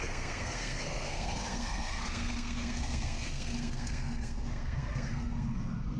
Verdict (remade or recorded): remade